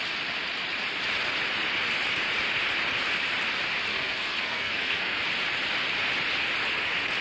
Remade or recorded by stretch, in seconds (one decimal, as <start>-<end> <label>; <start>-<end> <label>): 0.0-3.9 recorded; 3.9-5.2 remade; 5.2-7.2 recorded